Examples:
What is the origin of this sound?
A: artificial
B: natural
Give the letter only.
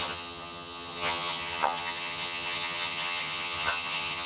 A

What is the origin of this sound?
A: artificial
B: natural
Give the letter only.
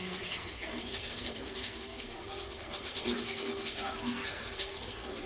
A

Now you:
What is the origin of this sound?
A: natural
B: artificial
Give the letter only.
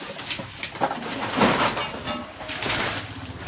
A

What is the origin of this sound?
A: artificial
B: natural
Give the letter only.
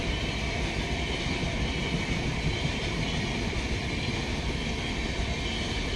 B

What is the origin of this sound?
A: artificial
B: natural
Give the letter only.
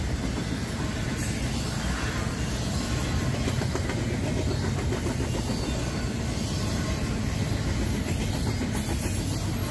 B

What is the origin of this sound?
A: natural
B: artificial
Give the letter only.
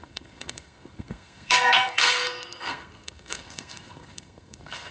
B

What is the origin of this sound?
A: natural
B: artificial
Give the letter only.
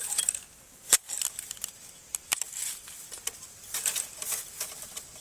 A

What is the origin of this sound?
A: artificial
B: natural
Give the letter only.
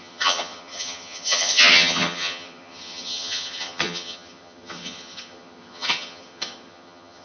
A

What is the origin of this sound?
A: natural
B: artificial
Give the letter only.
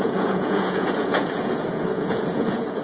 B